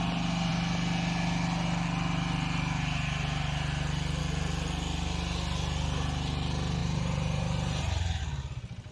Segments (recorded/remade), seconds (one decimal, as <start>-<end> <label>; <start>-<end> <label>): 0.0-6.8 recorded; 6.8-8.2 remade; 8.2-8.9 recorded

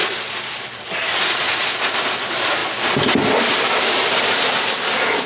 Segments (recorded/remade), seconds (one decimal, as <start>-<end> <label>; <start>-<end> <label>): 0.0-5.3 recorded

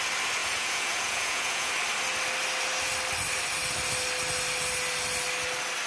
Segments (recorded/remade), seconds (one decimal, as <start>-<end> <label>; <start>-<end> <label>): 0.0-0.4 recorded; 0.4-1.7 remade; 1.7-5.9 recorded

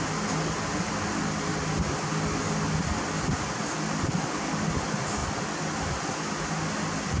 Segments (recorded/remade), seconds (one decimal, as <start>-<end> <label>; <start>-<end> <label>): 0.0-7.2 recorded